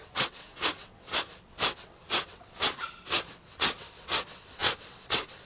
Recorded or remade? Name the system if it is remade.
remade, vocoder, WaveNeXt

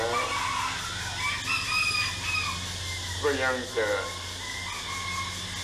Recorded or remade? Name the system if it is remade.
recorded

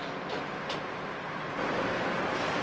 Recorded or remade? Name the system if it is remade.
recorded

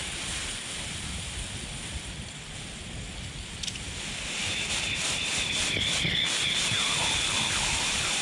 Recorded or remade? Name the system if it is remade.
recorded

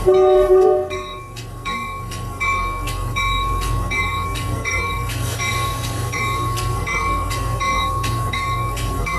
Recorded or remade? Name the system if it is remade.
remade, codec, SNAC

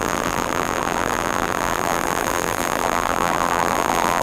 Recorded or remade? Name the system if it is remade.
remade, vocoder, BigVGAN v2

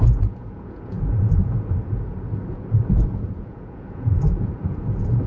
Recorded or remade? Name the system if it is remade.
remade, vocoder, Vocos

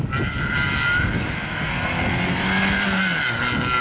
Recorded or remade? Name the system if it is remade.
recorded